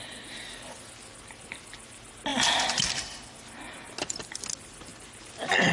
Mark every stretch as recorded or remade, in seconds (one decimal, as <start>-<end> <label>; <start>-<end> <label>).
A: 0.0-5.7 recorded